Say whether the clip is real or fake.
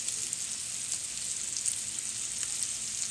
real